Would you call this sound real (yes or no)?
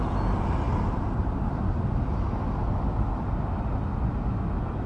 yes